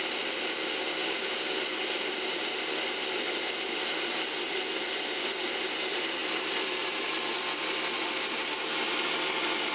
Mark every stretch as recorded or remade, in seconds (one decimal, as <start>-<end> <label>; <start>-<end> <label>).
0.0-9.7 recorded